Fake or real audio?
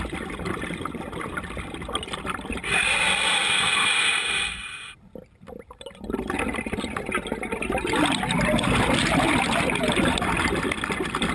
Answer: real